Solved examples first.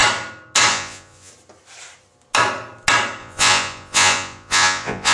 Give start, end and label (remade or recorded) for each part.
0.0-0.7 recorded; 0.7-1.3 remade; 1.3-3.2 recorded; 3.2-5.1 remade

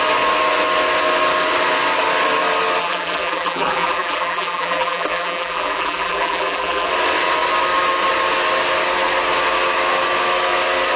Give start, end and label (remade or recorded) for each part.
0.0-2.8 recorded; 2.8-6.9 remade; 6.9-11.0 recorded

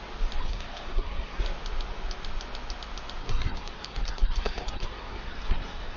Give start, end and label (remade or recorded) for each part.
0.0-0.4 recorded; 0.4-1.4 remade; 1.4-3.2 recorded; 3.2-6.0 remade

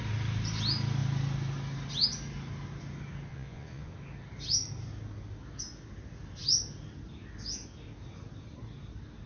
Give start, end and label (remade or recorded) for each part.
0.0-3.3 recorded; 3.3-3.9 remade; 3.9-9.3 recorded

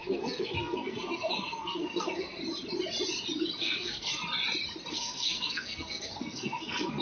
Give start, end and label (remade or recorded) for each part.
0.0-2.4 remade; 2.4-3.6 recorded; 3.6-4.2 remade; 4.2-4.9 recorded; 4.9-7.0 remade

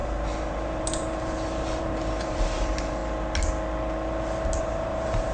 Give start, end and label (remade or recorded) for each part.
0.0-3.0 remade; 3.0-4.6 recorded; 4.6-5.3 remade

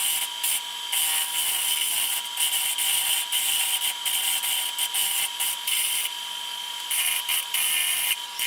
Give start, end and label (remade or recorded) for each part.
0.0-5.0 recorded; 5.0-8.5 remade